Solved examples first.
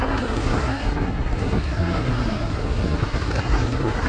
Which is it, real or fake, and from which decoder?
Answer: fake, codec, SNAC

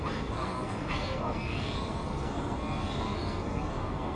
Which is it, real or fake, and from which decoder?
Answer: fake, codec, SNAC